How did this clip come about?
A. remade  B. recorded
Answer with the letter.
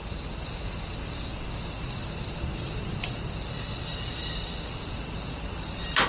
B